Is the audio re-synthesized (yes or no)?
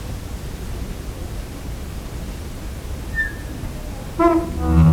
no